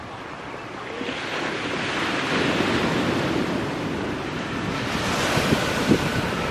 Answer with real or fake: real